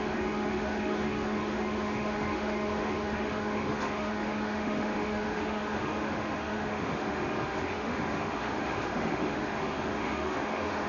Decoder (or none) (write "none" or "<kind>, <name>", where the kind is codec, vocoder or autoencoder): autoencoder, DAC-VAE